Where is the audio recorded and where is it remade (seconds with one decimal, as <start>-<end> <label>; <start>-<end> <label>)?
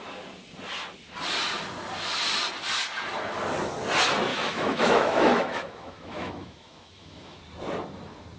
0.0-4.3 recorded; 4.3-7.4 remade; 7.4-8.4 recorded